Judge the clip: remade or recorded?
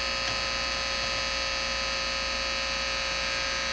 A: recorded